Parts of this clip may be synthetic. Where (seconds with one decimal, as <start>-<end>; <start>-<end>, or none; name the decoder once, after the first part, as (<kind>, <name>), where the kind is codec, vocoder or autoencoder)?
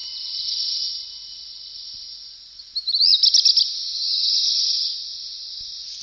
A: 0.0-0.9 (vocoder, BigVGAN v2); 1.5-2.6